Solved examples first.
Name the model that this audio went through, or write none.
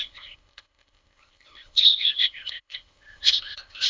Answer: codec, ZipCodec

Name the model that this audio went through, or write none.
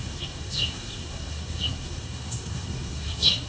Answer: codec, SNAC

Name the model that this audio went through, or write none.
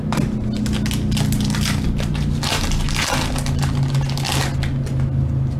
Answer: none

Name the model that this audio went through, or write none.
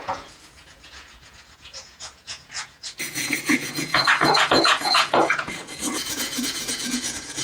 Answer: vocoder, Vocos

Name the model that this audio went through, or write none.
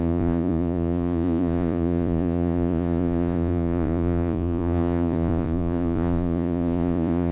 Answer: vocoder, Vocos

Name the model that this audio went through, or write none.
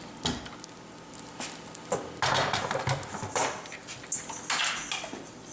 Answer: none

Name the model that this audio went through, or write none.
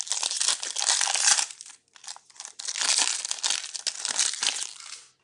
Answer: none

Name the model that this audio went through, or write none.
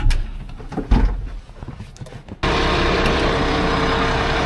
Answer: none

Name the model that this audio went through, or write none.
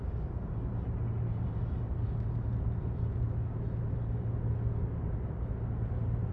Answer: none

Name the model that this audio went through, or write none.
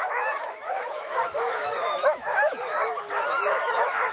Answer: autoencoder, DAC-VAE